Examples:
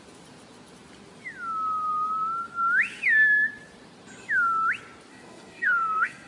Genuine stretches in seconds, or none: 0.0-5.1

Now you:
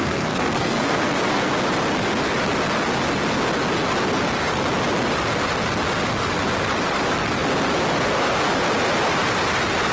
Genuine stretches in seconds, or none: 1.5-9.9

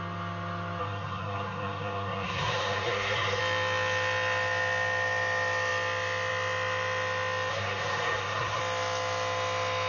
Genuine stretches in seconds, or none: 0.0-0.8; 3.4-7.5; 8.6-9.9